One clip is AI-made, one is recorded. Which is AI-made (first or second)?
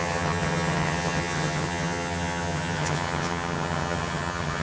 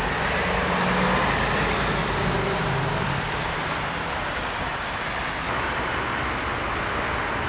first